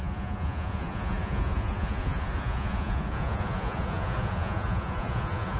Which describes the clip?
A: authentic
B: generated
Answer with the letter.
B